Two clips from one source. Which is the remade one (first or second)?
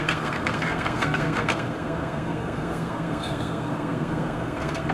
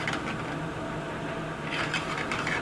first